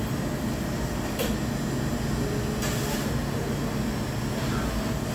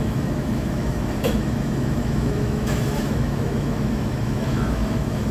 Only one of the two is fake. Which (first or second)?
second